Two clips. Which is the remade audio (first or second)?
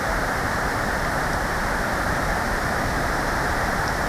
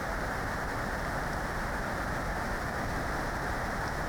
first